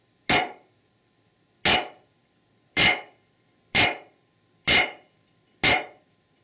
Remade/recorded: recorded